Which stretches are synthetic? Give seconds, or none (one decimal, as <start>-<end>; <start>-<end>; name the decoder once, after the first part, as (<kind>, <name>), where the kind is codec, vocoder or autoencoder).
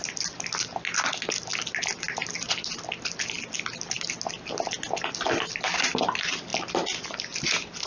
none